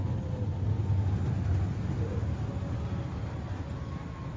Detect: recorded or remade recorded